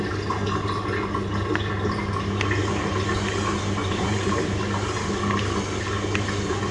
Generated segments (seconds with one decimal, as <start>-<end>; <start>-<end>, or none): 3.8-4.3